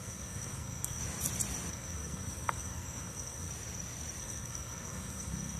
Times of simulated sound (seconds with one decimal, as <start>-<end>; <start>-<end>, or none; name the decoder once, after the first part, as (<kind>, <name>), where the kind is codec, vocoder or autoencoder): 0.0-1.0 (codec, SNAC); 1.7-3.5; 4.2-5.6